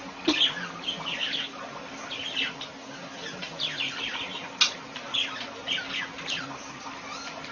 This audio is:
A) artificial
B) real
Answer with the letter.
B